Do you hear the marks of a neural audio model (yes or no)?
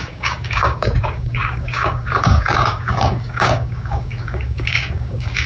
yes